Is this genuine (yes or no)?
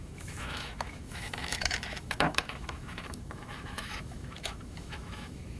no